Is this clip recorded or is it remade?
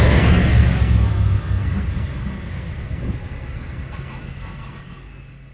remade